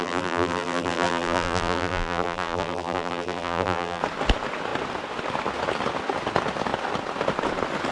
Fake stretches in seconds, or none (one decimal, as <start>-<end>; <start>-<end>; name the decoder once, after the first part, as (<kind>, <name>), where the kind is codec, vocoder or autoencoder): 0.0-4.0 (vocoder, BigVGAN v2)